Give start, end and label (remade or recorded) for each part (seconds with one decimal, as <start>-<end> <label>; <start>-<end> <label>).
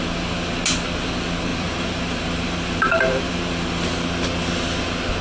0.0-1.5 recorded; 1.5-3.7 remade; 3.7-5.2 recorded